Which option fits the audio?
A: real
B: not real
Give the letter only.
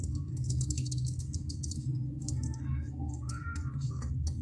B